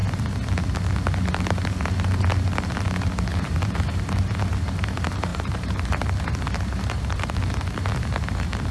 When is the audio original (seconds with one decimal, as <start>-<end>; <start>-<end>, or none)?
0.0-2.8